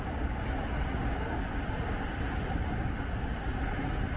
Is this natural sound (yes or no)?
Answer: yes